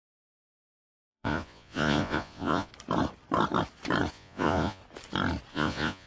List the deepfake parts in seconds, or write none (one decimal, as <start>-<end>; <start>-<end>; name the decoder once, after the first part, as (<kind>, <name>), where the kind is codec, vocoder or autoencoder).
0.0-2.7 (vocoder, Vocos); 4.1-4.8; 5.5-6.1

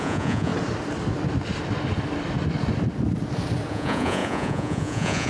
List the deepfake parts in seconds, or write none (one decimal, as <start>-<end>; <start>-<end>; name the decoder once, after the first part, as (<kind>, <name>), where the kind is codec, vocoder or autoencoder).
0.0-0.5 (vocoder, Vocos); 3.7-5.3

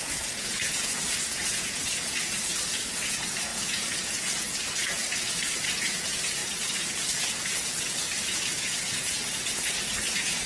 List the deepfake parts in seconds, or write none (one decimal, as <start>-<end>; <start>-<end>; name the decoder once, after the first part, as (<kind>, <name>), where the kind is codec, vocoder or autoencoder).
0.0-10.5 (vocoder, Vocos)

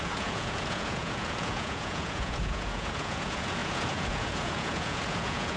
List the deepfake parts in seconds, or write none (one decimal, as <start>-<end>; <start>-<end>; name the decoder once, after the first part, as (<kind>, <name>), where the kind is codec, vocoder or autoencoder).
0.0-5.6 (vocoder, Vocos)

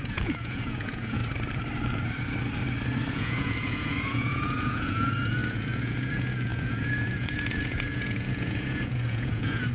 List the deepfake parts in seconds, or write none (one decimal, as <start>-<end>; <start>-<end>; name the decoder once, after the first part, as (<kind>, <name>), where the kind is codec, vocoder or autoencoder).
0.0-1.2 (vocoder, Vocos); 3.1-9.7

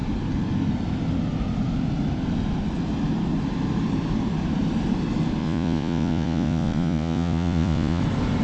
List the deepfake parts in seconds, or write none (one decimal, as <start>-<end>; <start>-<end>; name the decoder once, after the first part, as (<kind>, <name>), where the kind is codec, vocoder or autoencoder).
5.4-8.0 (vocoder, Vocos)